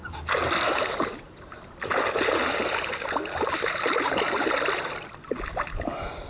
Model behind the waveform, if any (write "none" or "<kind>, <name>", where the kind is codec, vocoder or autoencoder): none